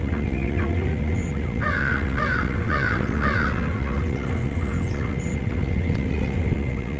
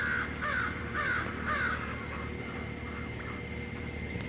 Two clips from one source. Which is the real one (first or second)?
second